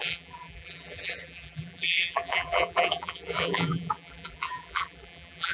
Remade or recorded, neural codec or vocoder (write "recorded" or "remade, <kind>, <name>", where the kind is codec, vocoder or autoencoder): remade, vocoder, BigVGAN v2